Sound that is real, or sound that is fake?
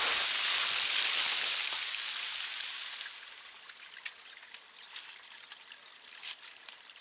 real